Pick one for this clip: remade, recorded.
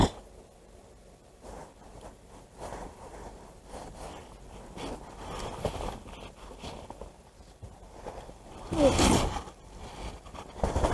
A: recorded